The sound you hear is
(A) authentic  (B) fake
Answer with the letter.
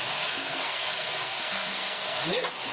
B